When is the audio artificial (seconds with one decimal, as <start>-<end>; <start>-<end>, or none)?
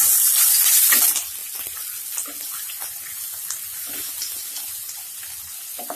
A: none